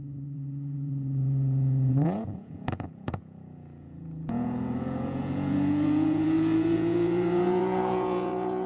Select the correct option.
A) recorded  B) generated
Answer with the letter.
B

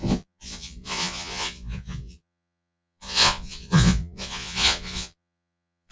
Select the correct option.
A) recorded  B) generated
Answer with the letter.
B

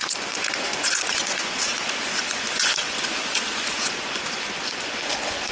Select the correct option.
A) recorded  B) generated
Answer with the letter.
B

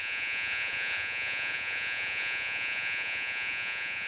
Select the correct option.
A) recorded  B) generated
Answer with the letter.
B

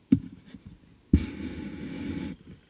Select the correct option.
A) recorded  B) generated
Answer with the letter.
A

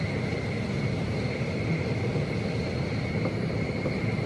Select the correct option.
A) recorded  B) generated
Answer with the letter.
A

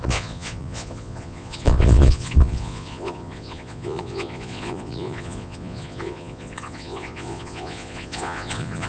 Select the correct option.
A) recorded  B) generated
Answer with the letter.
B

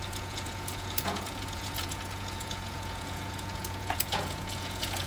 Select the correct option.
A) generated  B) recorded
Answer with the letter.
A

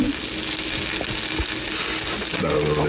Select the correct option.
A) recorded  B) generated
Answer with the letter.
A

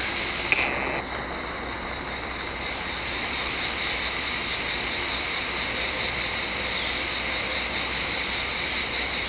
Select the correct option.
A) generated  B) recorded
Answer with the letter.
B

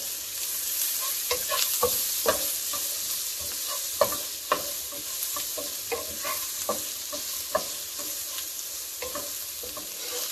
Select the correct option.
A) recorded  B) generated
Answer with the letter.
A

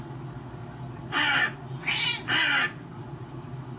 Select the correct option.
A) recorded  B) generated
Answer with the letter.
A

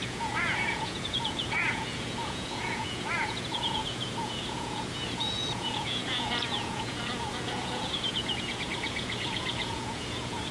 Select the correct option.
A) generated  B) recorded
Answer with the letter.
A